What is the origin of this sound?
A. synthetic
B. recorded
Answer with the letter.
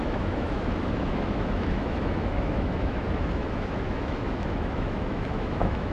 A